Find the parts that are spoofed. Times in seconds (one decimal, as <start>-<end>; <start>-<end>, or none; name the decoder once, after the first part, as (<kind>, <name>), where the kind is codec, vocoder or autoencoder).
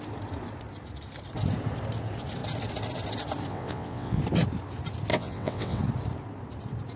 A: 3.5-4.2 (vocoder, WaveNeXt); 5.1-5.8